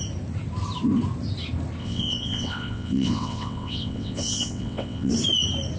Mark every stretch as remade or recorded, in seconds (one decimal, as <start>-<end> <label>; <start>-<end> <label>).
0.0-1.8 recorded; 1.8-5.1 remade; 5.1-5.8 recorded